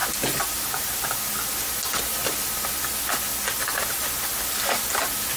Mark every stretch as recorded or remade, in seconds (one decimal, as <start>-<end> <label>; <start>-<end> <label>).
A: 0.0-5.4 recorded